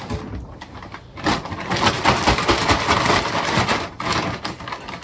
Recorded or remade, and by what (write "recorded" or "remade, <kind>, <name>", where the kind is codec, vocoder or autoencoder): recorded